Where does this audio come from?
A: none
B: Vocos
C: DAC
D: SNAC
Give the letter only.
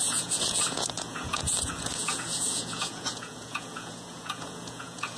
B